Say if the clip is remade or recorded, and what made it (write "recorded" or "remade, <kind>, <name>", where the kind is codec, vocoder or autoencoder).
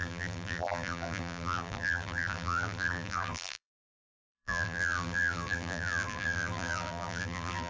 remade, vocoder, BigVGAN v2